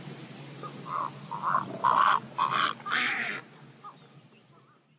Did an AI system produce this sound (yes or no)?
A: no